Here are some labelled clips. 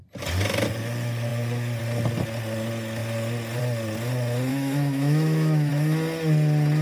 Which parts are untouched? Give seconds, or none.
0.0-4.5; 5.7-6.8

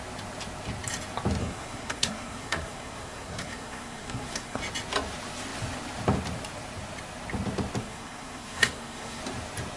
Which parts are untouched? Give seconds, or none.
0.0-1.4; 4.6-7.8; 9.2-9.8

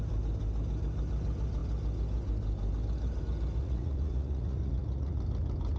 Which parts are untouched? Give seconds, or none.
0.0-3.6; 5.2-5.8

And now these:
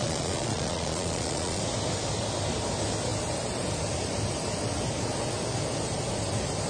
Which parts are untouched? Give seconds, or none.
1.6-6.7